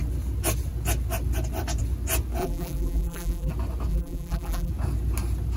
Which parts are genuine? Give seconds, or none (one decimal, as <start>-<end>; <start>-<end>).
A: 0.0-2.4; 3.5-3.9; 4.7-5.6